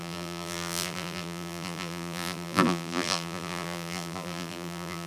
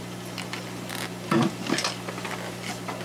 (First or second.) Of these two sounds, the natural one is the second